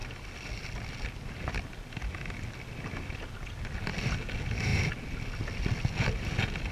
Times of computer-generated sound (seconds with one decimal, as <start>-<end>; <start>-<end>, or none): none